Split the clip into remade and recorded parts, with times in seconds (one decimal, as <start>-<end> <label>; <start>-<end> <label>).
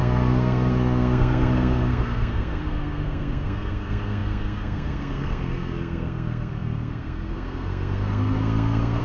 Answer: 0.0-9.0 remade